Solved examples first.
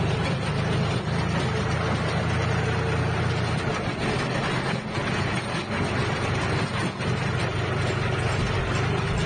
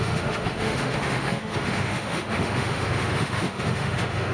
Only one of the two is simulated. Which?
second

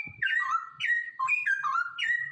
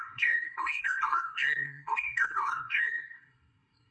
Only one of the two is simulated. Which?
second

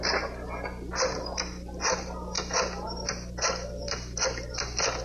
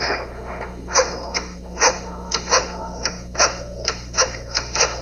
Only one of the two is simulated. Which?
second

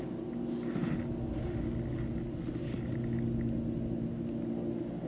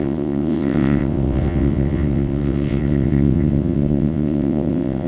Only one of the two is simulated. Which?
second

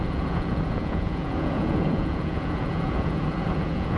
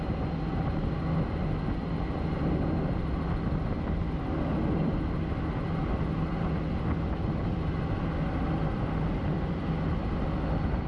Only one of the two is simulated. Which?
first